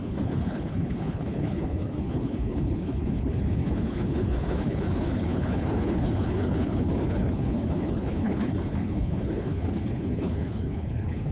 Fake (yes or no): yes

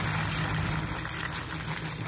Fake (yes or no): no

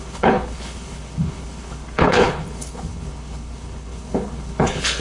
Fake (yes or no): yes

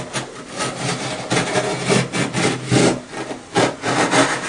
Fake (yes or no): no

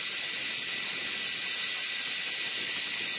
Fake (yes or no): no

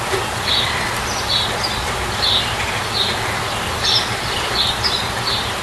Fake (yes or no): no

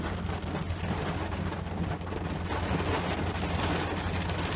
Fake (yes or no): no